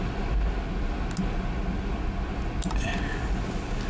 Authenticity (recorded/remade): recorded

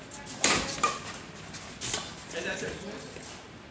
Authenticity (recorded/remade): recorded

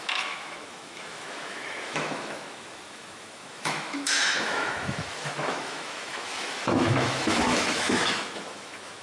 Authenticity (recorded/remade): remade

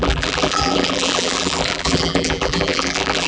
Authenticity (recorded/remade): remade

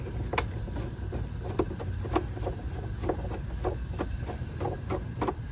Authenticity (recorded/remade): recorded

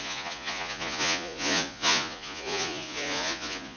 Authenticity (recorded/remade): remade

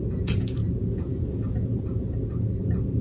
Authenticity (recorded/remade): remade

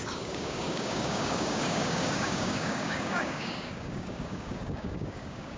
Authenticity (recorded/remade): remade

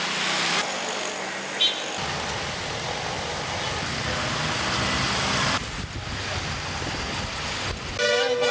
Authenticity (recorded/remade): recorded